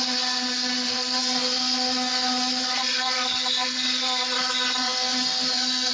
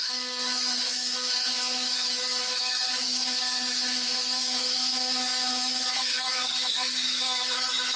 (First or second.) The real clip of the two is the first